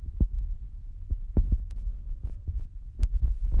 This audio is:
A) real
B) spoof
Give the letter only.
A